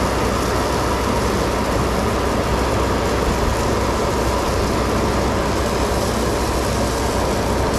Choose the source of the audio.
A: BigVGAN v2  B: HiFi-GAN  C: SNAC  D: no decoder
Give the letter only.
D